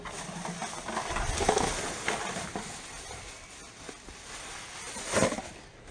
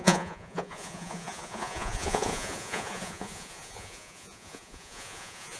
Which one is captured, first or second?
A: first